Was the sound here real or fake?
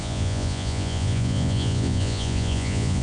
fake